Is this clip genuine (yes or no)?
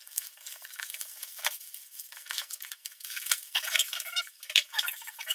no